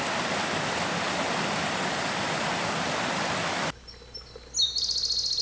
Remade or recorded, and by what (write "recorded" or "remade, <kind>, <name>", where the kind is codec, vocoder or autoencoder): recorded